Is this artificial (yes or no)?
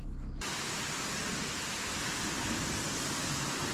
no